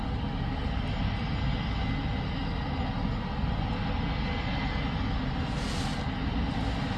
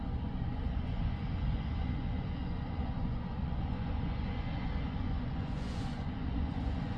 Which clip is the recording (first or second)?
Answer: first